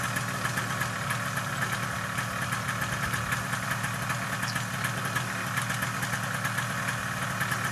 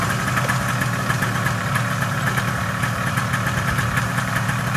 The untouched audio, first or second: first